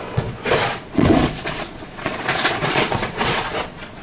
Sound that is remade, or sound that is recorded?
remade